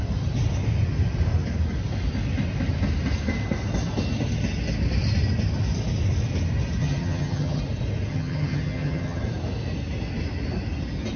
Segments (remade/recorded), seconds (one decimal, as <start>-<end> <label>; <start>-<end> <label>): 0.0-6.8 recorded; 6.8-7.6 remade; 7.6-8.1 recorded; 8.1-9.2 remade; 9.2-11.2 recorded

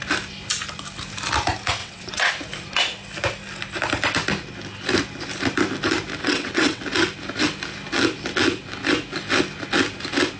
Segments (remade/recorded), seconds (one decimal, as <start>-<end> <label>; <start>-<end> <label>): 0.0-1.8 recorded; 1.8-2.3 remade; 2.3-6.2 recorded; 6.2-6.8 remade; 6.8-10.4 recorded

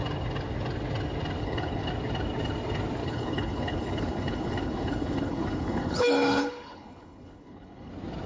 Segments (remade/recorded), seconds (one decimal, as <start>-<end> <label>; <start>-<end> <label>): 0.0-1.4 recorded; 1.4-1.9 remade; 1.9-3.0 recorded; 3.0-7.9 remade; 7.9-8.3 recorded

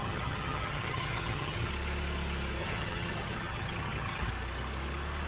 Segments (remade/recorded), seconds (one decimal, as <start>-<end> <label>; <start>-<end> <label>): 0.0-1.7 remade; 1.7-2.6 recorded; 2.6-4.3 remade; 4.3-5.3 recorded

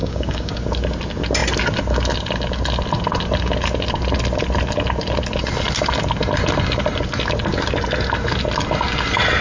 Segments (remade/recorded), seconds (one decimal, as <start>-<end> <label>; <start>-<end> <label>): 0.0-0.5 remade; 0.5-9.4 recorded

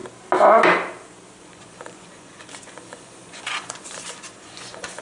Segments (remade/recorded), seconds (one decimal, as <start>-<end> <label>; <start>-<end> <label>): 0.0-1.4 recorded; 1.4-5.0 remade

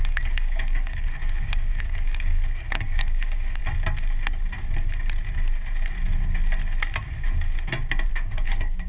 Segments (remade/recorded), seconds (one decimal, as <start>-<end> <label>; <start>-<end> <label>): 0.0-3.6 remade; 3.6-8.1 recorded; 8.1-8.9 remade